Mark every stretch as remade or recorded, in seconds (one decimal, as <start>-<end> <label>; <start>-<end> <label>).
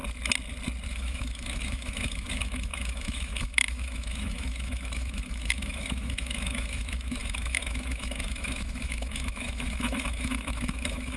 0.0-0.9 recorded; 0.9-11.2 remade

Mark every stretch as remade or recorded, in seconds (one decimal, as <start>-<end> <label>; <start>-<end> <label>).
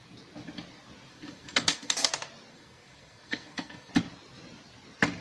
0.0-1.1 recorded; 1.1-2.1 remade; 2.1-2.5 recorded; 2.5-3.9 remade; 3.9-5.2 recorded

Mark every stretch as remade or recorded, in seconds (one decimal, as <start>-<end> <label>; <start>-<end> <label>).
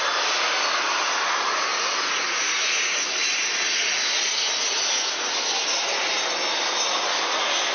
0.0-7.7 recorded